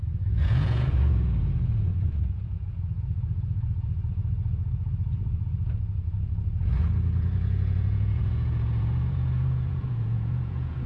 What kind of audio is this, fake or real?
fake